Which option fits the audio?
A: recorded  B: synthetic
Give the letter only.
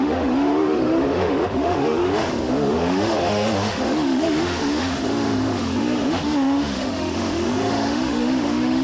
B